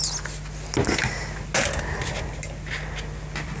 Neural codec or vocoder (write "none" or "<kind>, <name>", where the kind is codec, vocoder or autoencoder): none